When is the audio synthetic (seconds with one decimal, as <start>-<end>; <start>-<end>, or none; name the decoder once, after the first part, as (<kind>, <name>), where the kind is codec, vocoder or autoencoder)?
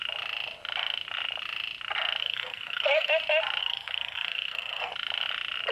2.2-3.1 (codec, SNAC); 3.6-4.9